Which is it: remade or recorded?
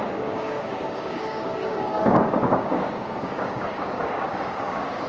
remade